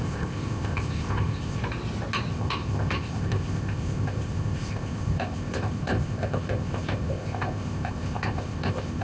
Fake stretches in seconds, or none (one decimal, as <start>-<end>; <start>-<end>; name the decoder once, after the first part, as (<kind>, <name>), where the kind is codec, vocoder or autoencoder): 0.0-1.6 (codec, ZipCodec); 2.3-9.0